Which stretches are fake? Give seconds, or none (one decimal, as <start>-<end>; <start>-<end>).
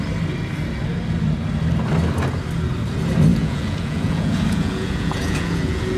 3.3-6.0